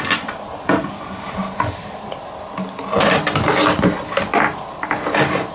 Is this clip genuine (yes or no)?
yes